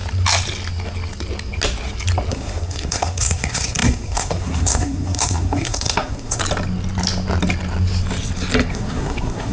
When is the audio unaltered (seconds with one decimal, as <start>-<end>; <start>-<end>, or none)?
0.0-2.3; 6.4-8.7